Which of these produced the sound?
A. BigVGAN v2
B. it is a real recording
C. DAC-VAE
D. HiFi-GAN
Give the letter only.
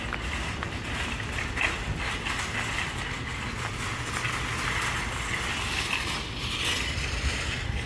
B